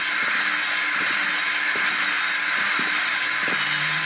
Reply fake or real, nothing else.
real